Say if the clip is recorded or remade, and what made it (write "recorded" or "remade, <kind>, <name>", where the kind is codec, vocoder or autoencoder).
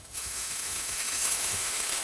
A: remade, autoencoder, DAC-VAE